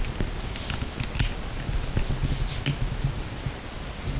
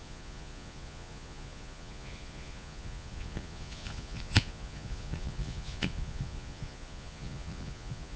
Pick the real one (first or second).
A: first